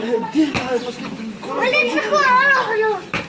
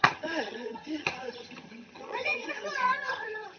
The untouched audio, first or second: first